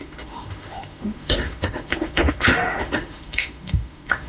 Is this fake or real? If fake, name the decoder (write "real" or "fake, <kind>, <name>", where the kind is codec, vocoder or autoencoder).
fake, autoencoder, DAC-VAE